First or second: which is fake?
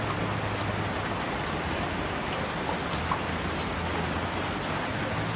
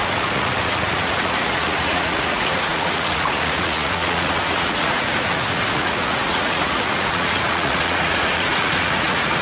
second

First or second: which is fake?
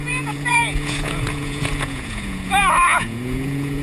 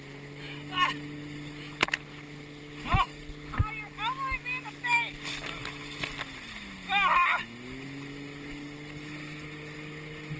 first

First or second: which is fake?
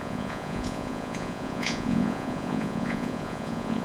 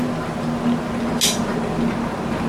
first